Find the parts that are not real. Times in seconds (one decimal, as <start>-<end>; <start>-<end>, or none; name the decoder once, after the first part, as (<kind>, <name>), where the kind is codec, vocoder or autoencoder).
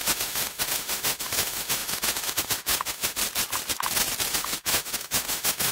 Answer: 0.0-3.2 (autoencoder, DAC-VAE); 4.3-5.7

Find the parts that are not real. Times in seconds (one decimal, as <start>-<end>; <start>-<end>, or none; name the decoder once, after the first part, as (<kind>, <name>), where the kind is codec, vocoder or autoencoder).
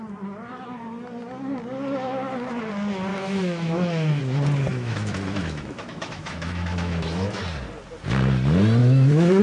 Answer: 3.1-4.2 (autoencoder, DAC-VAE); 4.7-7.4; 8.8-9.4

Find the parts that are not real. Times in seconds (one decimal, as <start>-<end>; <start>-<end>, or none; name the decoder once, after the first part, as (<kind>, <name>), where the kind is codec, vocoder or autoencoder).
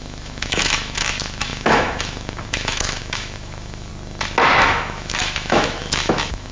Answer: 0.0-3.9 (autoencoder, DAC-VAE); 4.6-6.5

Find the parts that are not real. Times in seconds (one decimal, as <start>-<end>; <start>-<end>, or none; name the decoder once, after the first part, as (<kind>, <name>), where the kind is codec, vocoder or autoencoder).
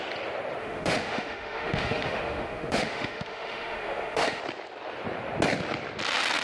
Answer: 0.6-4.4 (autoencoder, DAC-VAE)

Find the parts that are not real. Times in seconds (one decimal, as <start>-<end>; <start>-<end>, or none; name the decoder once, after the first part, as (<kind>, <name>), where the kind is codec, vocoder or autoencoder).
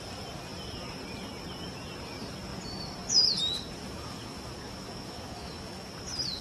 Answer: 3.8-5.9 (autoencoder, DAC-VAE)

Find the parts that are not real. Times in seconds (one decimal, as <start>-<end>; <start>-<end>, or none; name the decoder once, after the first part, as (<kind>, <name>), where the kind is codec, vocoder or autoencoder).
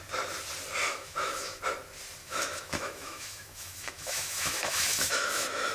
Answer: 0.8-1.6 (autoencoder, DAC-VAE); 2.2-5.7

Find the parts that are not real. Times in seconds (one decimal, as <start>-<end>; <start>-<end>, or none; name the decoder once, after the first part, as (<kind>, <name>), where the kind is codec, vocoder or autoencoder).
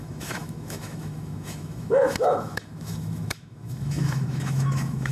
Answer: 0.0-5.1 (autoencoder, DAC-VAE)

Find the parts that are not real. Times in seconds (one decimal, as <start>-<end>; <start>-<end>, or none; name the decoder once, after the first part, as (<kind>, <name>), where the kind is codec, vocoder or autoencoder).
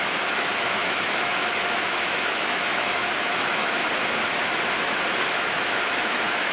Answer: 0.0-3.8 (autoencoder, DAC-VAE); 5.5-6.5